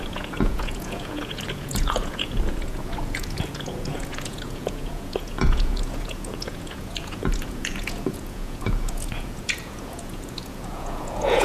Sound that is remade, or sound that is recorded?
remade